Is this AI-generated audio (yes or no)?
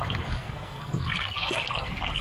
yes